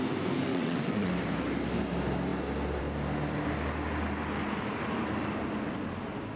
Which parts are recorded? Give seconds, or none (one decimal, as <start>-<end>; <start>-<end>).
0.0-0.5; 1.1-6.4